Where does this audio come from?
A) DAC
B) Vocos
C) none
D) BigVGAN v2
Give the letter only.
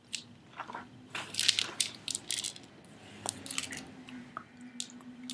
C